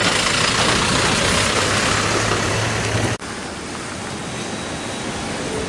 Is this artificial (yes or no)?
no